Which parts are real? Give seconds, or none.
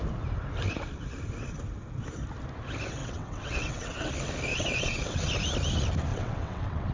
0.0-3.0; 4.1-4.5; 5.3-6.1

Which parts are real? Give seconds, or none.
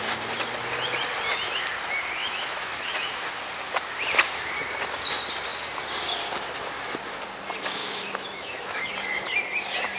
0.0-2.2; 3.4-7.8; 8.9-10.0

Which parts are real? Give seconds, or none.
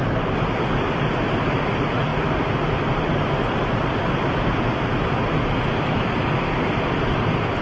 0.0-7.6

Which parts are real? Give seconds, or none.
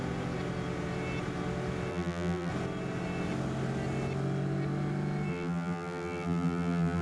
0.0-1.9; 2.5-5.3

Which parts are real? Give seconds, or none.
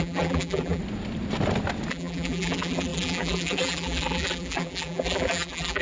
0.8-1.9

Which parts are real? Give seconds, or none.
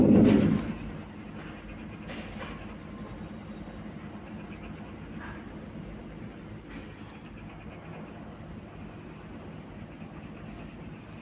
0.0-11.2